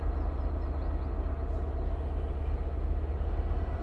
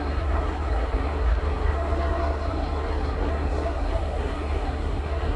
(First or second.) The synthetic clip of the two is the second